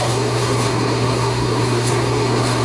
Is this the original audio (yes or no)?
no